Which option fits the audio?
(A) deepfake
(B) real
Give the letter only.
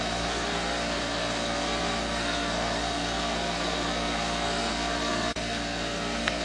A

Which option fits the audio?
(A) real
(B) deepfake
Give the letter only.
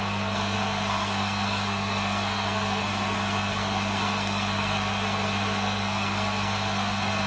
B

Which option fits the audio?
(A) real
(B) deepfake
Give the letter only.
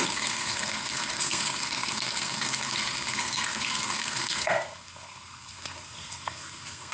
B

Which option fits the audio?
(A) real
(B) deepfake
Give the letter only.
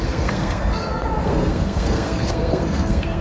B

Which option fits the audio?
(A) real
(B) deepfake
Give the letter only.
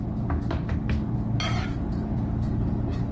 A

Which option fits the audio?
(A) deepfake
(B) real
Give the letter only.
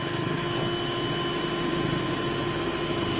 B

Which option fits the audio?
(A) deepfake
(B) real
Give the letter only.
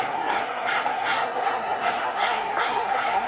A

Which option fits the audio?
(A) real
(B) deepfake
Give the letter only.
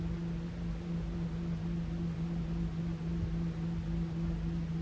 A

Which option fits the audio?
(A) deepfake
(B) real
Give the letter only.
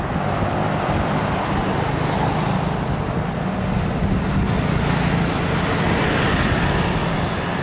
B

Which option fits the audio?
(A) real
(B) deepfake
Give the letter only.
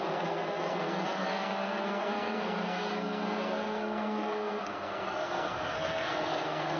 B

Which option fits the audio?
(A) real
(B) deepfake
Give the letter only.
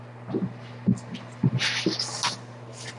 A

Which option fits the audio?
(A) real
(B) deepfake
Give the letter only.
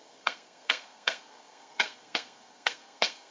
B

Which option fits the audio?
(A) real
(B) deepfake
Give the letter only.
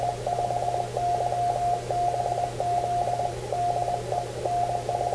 A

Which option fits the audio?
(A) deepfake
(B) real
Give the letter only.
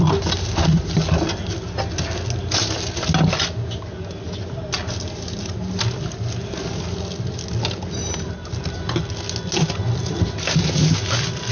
B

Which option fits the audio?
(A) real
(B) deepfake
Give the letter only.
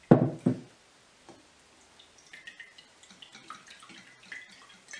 A